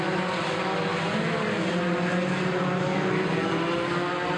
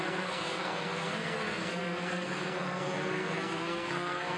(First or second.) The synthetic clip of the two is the second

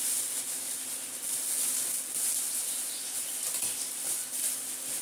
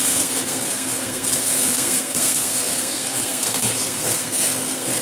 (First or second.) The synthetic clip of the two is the second